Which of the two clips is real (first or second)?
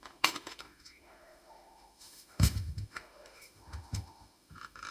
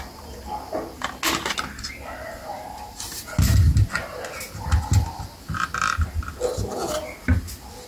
second